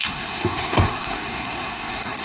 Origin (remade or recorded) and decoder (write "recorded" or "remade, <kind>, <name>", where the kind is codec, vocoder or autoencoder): remade, codec, SNAC